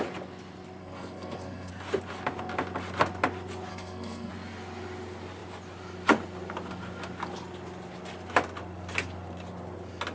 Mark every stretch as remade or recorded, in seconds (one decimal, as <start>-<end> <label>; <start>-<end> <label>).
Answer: 0.0-0.8 recorded; 0.8-1.7 remade; 1.7-3.7 recorded; 3.7-4.3 remade; 4.3-10.1 recorded